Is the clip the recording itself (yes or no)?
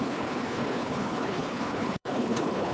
no